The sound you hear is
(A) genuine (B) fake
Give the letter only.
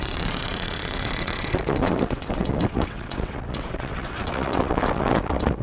B